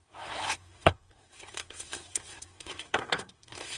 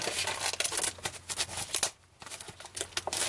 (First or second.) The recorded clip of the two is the second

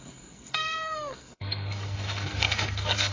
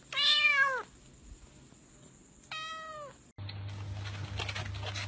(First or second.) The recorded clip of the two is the second